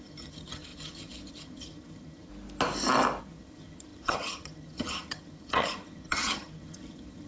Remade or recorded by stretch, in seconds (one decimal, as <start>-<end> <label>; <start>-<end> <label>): 0.0-2.3 remade; 2.3-3.2 recorded; 3.2-7.3 remade